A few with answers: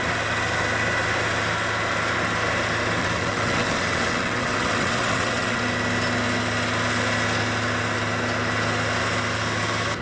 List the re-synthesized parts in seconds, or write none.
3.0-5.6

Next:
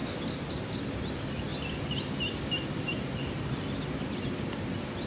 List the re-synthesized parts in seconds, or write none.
none

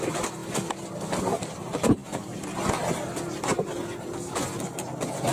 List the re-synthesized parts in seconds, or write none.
none

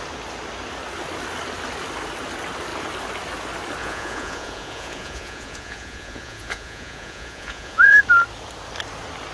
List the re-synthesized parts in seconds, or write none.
3.8-8.0

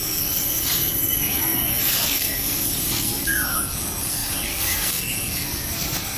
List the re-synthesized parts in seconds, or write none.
0.0-6.2

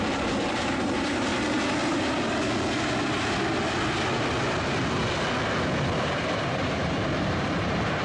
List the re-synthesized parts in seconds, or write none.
0.0-1.3; 6.0-8.0